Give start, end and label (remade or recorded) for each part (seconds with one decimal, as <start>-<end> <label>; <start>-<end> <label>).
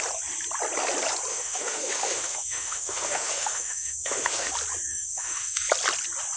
0.0-1.3 recorded; 1.3-4.5 remade; 4.5-4.9 recorded; 4.9-5.7 remade; 5.7-6.4 recorded